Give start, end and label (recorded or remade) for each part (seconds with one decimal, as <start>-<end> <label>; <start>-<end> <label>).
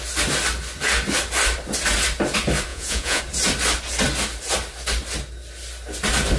0.0-2.7 recorded; 2.7-3.2 remade; 3.2-6.4 recorded